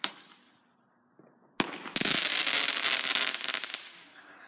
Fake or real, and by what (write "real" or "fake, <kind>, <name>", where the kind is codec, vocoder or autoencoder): real